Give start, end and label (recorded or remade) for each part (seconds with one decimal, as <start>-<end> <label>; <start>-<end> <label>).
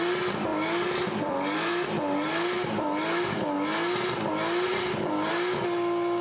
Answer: 0.0-6.2 recorded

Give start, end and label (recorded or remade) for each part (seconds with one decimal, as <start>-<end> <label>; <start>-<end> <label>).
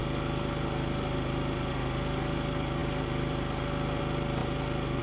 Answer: 0.0-5.0 recorded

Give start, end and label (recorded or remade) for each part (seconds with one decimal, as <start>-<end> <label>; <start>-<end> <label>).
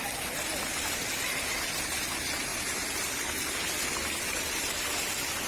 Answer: 0.0-5.5 recorded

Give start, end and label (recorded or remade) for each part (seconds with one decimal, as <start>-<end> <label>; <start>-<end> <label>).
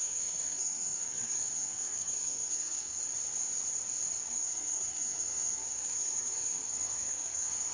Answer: 0.0-3.0 remade; 3.0-4.3 recorded; 4.3-7.7 remade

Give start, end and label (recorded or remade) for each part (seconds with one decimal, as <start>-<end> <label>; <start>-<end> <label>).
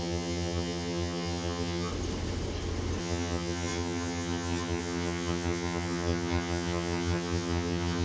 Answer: 0.0-1.9 remade; 1.9-3.0 recorded; 3.0-8.0 remade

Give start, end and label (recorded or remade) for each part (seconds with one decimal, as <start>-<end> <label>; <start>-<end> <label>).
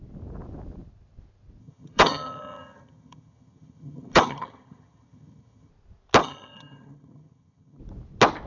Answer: 0.0-1.6 recorded; 1.6-5.7 remade; 5.7-6.2 recorded; 6.2-7.8 remade; 7.8-8.5 recorded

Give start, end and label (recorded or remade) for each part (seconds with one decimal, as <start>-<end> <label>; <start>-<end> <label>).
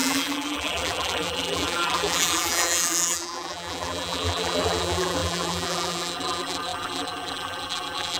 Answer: 0.0-8.2 remade